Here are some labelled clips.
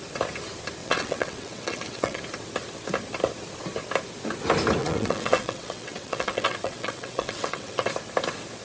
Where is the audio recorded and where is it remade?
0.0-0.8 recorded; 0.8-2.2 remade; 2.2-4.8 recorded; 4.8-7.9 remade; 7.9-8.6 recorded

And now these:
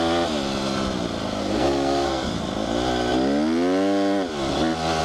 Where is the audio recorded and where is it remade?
0.0-1.4 recorded; 1.4-2.3 remade; 2.3-5.0 recorded